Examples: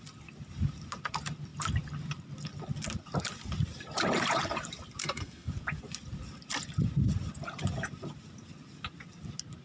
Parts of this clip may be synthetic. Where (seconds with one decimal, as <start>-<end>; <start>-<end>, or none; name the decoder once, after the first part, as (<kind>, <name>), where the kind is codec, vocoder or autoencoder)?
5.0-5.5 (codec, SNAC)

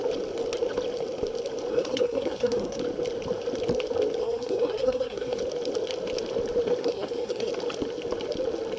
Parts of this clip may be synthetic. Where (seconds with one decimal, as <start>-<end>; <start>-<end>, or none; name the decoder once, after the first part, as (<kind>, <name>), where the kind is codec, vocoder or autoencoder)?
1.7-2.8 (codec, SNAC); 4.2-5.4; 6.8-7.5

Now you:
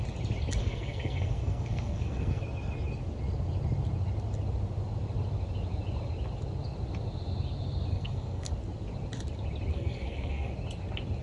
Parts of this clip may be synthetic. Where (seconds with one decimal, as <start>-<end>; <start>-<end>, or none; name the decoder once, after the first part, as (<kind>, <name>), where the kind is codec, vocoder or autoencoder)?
0.6-2.4 (codec, SNAC); 7.9-8.5; 9.7-10.5

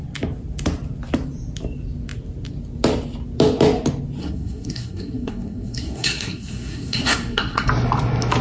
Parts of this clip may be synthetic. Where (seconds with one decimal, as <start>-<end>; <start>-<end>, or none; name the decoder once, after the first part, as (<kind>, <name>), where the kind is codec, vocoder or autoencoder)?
4.2-7.7 (codec, SNAC)

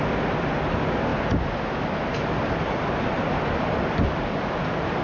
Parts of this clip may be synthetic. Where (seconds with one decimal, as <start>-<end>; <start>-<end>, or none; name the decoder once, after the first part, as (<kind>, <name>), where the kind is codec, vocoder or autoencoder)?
none

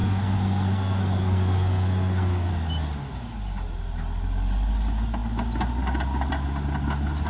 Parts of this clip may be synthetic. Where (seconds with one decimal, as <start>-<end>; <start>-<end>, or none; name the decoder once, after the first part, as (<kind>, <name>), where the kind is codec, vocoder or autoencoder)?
0.0-2.5 (codec, SNAC)

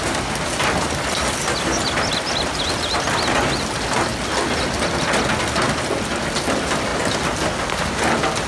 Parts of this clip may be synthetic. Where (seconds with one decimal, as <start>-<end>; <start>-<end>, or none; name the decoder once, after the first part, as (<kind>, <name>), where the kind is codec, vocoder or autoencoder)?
none

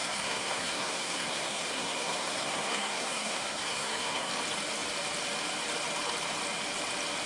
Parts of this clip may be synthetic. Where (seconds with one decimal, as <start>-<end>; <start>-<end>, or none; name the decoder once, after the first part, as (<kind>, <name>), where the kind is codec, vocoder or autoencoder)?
0.0-4.3 (codec, SNAC)